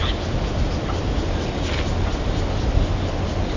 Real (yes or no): yes